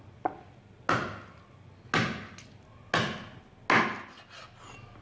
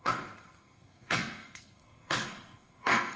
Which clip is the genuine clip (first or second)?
first